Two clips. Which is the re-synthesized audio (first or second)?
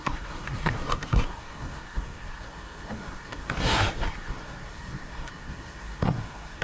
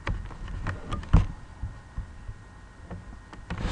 first